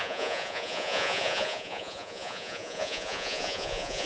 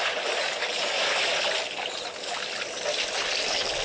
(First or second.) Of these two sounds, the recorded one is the second